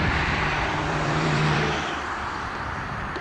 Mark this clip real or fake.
fake